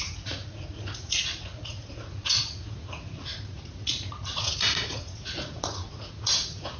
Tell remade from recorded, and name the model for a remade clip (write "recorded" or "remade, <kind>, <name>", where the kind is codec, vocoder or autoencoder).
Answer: remade, vocoder, Vocos